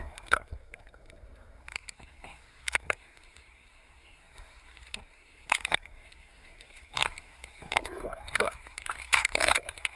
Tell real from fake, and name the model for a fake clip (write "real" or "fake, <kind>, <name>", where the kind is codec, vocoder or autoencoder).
fake, codec, SNAC